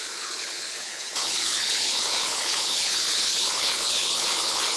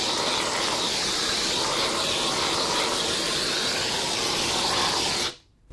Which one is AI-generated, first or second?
first